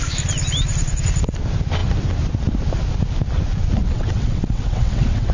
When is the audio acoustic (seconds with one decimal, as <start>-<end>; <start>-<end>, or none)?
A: 0.0-3.8